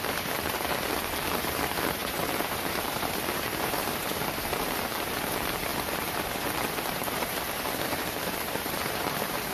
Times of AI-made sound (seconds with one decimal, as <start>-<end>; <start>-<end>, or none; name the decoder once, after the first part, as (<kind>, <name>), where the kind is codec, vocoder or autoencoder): 0.0-9.5 (vocoder, BigVGAN v2)